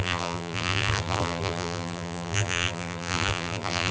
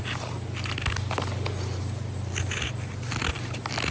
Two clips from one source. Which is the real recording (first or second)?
second